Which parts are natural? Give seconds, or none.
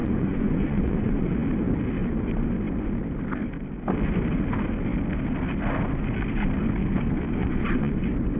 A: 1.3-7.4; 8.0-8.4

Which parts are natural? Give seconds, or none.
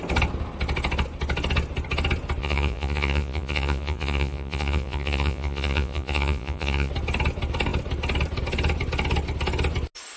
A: 0.0-2.4; 6.9-10.2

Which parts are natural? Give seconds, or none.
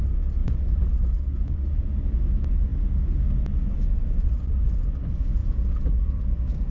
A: 0.0-0.4; 1.9-5.4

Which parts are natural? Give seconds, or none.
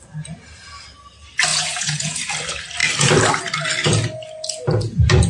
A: 0.0-1.5; 2.3-5.3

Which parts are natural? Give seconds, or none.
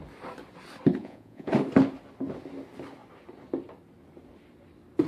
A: 0.0-1.0; 1.5-5.1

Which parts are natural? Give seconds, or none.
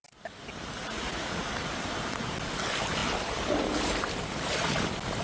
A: 0.0-0.8; 1.7-5.2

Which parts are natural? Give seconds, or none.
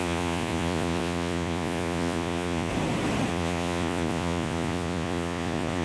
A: 2.7-3.3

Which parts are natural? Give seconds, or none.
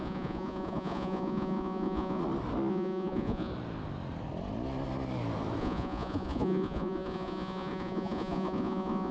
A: 2.2-2.7; 3.5-5.6